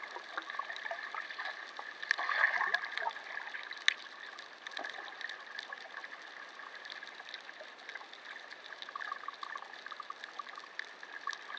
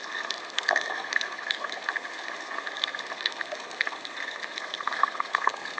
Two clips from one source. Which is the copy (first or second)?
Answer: second